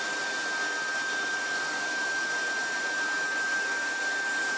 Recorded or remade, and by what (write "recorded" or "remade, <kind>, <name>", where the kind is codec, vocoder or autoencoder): recorded